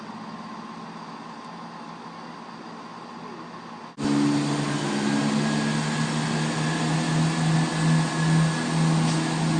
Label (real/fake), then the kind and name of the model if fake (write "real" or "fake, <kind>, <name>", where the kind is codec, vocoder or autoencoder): real